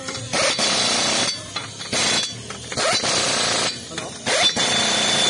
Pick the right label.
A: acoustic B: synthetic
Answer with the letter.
A